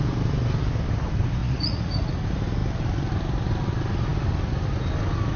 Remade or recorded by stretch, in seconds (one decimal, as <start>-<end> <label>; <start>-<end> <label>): 0.0-1.4 recorded; 1.4-2.0 remade; 2.0-5.4 recorded